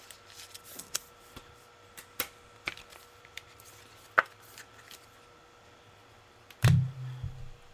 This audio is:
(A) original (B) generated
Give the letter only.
A